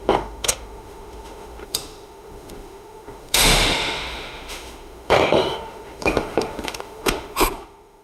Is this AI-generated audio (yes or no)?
yes